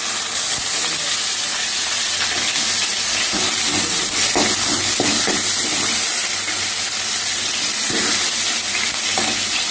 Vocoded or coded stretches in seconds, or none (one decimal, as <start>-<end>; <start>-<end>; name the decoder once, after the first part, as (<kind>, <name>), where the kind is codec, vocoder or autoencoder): 1.5-2.1 (vocoder, Vocos)